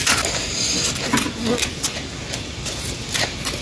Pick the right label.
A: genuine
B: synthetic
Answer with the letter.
A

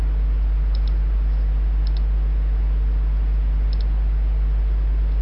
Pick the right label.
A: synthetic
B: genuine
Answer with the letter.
B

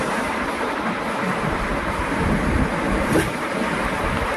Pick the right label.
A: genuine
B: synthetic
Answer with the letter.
B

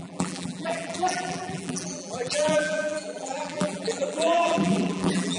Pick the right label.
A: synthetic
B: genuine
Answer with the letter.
A